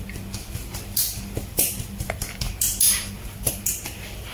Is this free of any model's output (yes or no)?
no